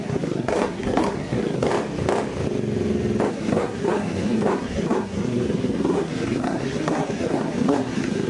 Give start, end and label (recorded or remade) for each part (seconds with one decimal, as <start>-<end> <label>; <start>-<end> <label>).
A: 0.0-1.7 remade; 1.7-3.3 recorded; 3.3-8.3 remade